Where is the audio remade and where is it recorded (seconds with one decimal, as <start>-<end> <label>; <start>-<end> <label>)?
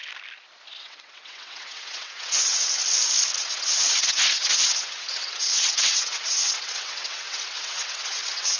0.0-0.8 recorded; 0.8-2.8 remade; 2.8-3.4 recorded; 3.4-8.6 remade